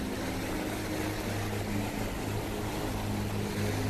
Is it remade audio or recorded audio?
recorded